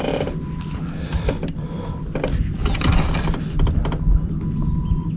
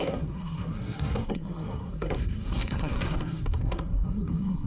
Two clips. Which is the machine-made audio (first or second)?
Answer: second